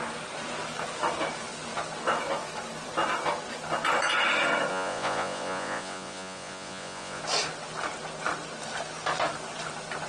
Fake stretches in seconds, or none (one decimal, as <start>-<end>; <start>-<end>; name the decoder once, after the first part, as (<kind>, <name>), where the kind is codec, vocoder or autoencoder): 4.7-7.2 (vocoder, Vocos)